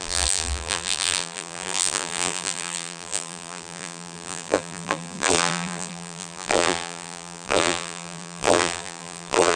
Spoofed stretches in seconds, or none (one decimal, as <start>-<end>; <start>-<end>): 0.0-9.6